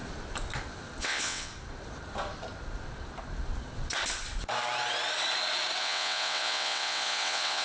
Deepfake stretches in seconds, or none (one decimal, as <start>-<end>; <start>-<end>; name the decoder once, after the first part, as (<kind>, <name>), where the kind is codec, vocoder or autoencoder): 1.0-1.5 (vocoder, WaveNeXt); 5.8-7.6